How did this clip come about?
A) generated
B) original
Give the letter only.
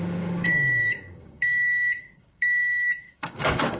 A